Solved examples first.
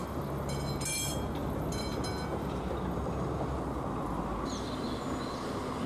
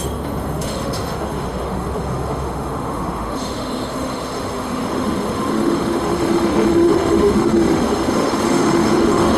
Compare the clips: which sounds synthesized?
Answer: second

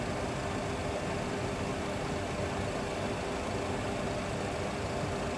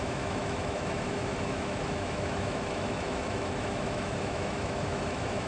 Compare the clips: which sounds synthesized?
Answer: second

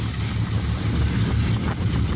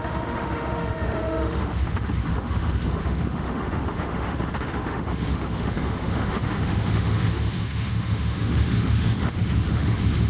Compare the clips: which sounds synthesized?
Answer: second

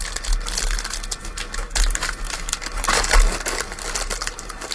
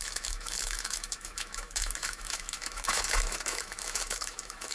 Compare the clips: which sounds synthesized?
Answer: second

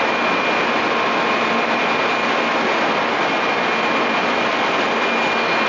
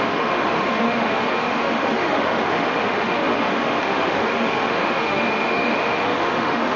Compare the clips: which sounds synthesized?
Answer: second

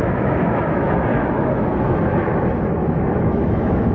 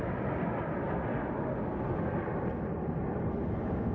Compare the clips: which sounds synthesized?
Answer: first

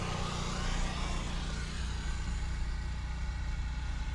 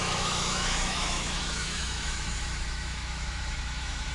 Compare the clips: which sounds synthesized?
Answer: second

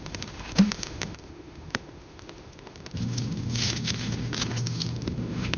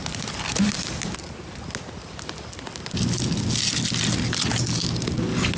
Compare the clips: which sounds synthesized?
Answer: first